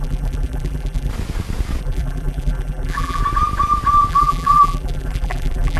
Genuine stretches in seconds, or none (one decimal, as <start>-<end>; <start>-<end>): 1.1-1.8; 3.2-4.1